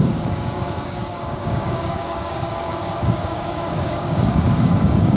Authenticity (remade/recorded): remade